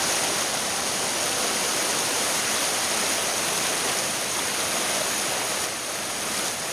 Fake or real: real